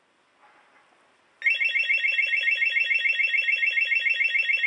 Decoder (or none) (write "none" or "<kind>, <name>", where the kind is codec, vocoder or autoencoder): none